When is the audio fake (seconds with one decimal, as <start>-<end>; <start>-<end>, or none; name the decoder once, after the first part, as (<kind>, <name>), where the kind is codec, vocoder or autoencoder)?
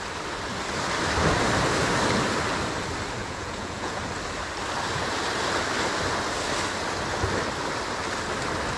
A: 3.2-4.0 (vocoder, Vocos)